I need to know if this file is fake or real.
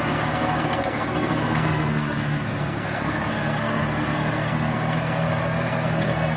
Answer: fake